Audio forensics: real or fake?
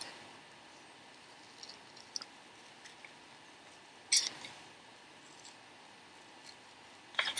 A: real